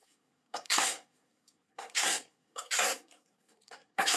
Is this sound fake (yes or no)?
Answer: yes